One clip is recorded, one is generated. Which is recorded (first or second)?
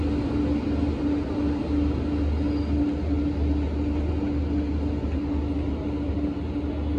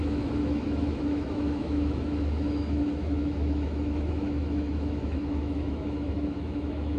first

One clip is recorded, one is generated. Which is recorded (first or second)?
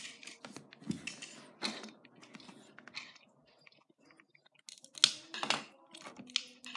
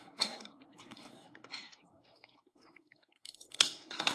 first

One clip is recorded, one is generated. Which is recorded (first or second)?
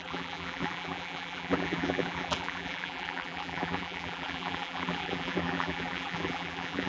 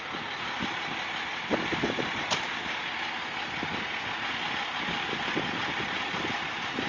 second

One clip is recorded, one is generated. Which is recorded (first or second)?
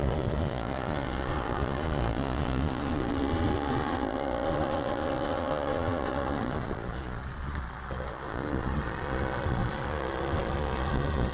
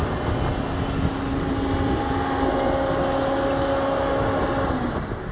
second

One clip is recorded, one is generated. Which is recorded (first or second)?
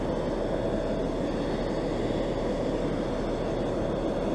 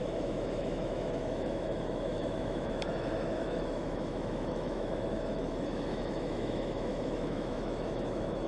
first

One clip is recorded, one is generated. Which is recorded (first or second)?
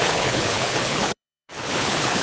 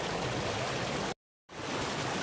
second